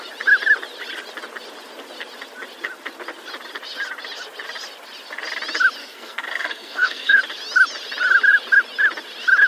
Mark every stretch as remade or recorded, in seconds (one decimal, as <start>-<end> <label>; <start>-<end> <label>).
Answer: 0.0-5.8 recorded; 5.8-7.2 remade; 7.2-9.5 recorded